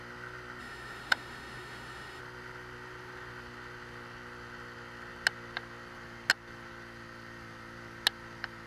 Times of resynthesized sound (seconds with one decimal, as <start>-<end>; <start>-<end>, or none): 0.6-2.2